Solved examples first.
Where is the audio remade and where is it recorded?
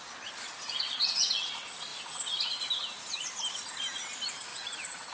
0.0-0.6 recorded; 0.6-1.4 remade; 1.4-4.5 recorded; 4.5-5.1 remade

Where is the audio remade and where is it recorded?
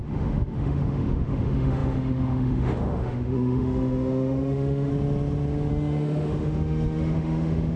0.0-4.9 remade; 4.9-5.7 recorded; 5.7-7.8 remade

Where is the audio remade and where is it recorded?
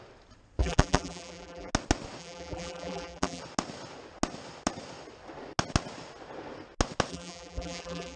0.0-0.6 recorded; 0.6-1.7 remade; 1.7-2.2 recorded; 2.2-3.4 remade; 3.4-7.1 recorded; 7.1-8.2 remade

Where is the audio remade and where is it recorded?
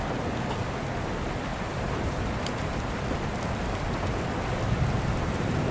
0.0-1.5 recorded; 1.5-3.0 remade; 3.0-5.7 recorded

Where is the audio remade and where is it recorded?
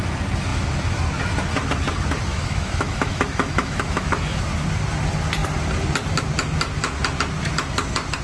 0.0-2.3 recorded; 2.3-4.4 remade; 4.4-8.2 recorded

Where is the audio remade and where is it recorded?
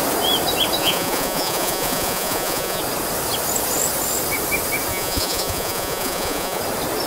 0.0-0.8 recorded; 0.8-2.8 remade; 2.8-4.9 recorded; 4.9-6.6 remade; 6.6-7.1 recorded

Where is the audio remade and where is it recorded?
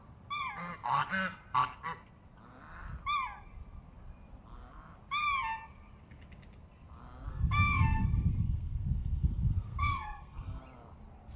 0.0-7.3 recorded; 7.3-10.6 remade; 10.6-11.4 recorded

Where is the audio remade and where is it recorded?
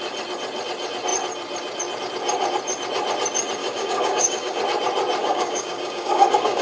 0.0-3.6 recorded; 3.6-4.6 remade; 4.6-5.2 recorded; 5.2-6.6 remade